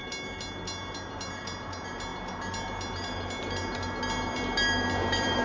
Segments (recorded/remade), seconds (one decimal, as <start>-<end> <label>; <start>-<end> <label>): 0.0-5.4 recorded